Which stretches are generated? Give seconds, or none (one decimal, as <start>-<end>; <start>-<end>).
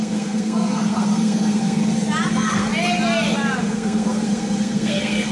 0.0-1.8; 2.3-2.7; 3.6-5.3